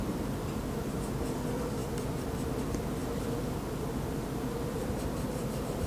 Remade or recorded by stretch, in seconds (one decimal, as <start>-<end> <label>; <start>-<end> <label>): 0.0-5.9 recorded